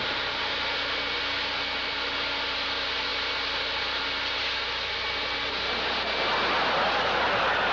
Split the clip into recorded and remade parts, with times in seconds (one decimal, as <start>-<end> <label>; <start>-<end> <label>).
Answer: 0.0-7.7 recorded